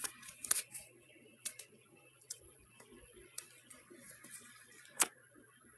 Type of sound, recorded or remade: remade